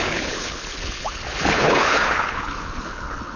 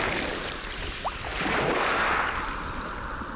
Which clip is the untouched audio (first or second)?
second